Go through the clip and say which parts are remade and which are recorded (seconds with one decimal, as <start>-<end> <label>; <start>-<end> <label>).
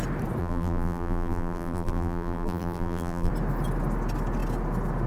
0.0-0.4 recorded; 0.4-3.3 remade; 3.3-5.1 recorded